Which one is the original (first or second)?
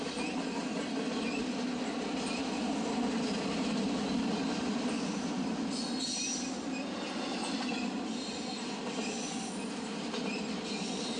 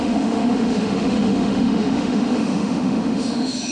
first